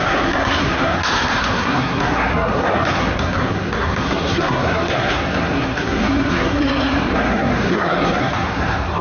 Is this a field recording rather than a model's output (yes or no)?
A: no